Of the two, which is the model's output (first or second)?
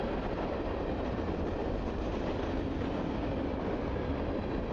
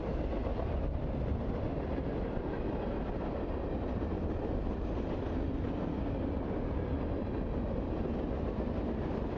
first